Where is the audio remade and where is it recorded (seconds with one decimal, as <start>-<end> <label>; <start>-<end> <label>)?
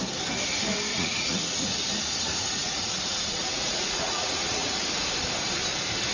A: 0.0-0.9 recorded; 0.9-1.8 remade; 1.8-2.6 recorded; 2.6-4.8 remade; 4.8-6.1 recorded